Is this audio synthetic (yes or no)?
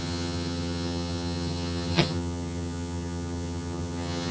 yes